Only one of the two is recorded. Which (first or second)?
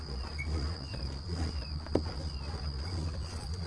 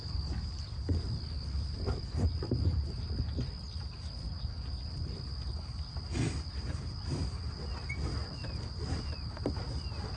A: second